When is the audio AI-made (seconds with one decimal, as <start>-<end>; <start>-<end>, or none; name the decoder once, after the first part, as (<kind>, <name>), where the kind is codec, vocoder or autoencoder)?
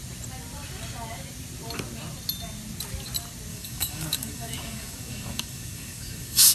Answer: 3.5-6.5 (codec, DAC)